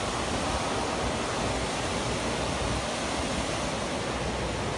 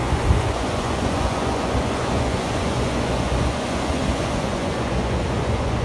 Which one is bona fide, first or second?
first